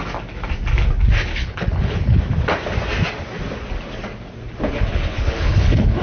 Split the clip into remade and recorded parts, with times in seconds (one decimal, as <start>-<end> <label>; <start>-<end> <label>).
0.0-1.3 recorded; 1.3-2.2 remade; 2.2-4.9 recorded; 4.9-6.0 remade